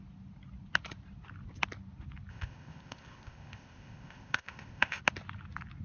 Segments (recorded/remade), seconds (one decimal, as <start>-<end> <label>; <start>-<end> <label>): 0.0-2.3 recorded; 2.3-5.0 remade; 5.0-5.8 recorded